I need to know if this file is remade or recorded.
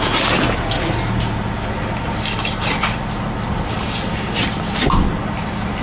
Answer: recorded